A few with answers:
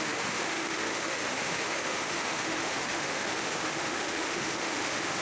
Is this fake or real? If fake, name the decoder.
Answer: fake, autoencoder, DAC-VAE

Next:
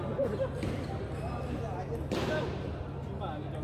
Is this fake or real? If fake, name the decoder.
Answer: real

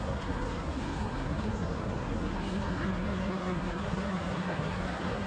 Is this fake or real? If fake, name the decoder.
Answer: fake, codec, SNAC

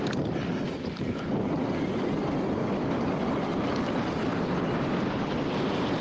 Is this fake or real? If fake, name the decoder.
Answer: fake, vocoder, BigVGAN v2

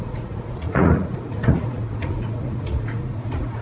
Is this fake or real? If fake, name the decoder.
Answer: fake, vocoder, Vocos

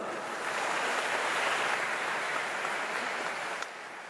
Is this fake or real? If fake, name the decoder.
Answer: fake, vocoder, BigVGAN v2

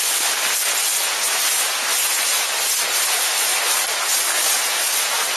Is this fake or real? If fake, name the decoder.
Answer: real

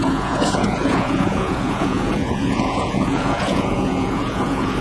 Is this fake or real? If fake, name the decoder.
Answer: fake, vocoder, Vocos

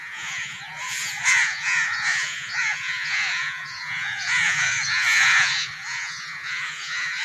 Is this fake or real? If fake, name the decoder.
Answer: fake, vocoder, Vocos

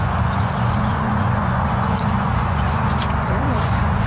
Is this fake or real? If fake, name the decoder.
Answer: fake, vocoder, Vocos